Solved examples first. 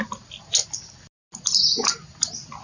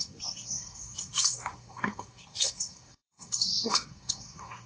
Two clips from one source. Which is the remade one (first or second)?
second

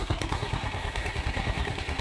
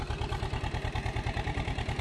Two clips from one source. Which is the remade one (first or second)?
first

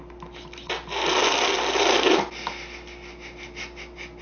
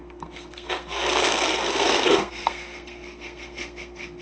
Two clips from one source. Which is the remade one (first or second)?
second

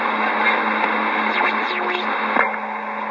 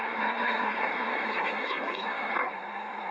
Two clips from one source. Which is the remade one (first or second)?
second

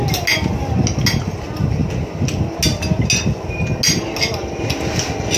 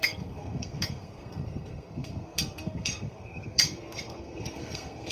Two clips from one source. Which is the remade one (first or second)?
second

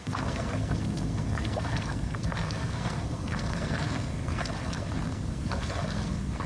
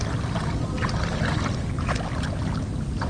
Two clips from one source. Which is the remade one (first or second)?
first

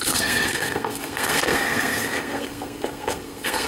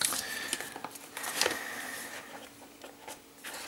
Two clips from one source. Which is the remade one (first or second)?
first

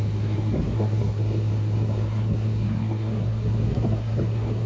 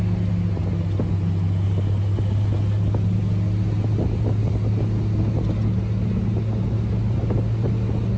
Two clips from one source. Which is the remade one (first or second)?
first